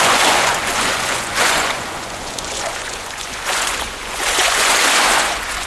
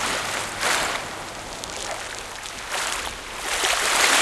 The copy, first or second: first